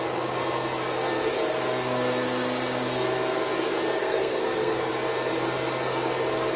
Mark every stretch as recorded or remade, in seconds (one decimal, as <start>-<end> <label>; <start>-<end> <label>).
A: 0.0-4.0 recorded; 4.0-4.9 remade; 4.9-6.6 recorded